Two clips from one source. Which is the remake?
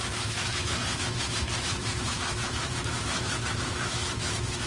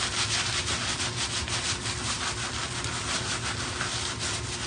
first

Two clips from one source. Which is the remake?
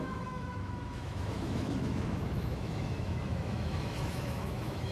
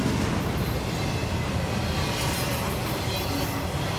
first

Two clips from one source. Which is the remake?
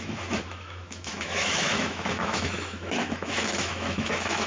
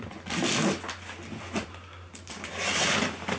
first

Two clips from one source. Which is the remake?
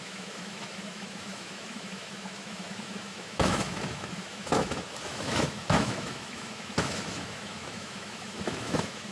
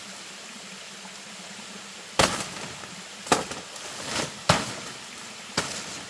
first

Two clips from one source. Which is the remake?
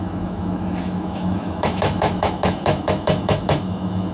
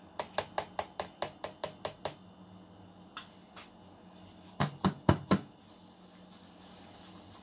first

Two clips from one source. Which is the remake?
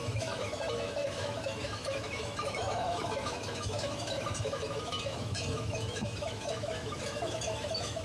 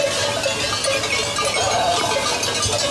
first